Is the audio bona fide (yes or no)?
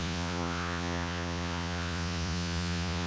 no